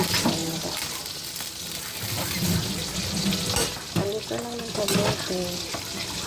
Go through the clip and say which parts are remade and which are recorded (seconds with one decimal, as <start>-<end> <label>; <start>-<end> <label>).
0.0-6.3 recorded